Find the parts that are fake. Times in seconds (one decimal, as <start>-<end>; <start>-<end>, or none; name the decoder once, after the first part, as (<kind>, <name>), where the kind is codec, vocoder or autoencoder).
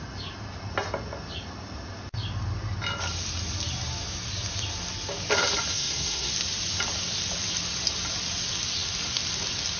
5.7-6.3 (codec, SNAC)